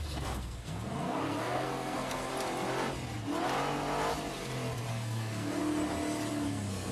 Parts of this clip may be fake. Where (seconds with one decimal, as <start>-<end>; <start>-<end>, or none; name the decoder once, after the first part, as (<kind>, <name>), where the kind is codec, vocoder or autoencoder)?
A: 0.0-2.3 (codec, SNAC); 4.9-5.6; 6.3-6.9